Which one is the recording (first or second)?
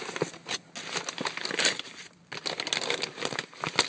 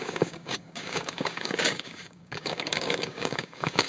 first